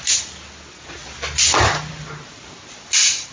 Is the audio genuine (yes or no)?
yes